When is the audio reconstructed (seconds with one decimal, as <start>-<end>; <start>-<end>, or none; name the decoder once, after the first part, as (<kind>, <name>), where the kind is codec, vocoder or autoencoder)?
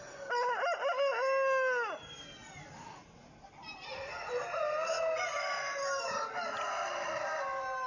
none